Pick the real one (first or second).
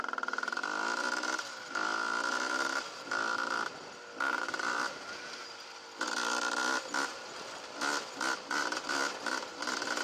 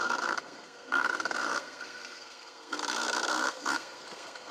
first